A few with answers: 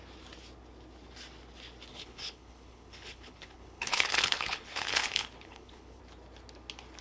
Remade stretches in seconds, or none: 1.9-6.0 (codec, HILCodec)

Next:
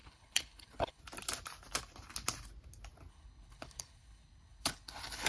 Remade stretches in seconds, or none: 0.0-1.0 (codec, HILCodec); 3.1-5.3

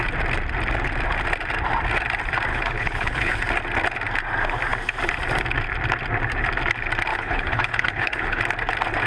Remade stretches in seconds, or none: 2.5-3.4 (codec, HILCodec); 7.1-8.4